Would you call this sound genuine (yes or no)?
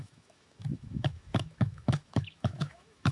no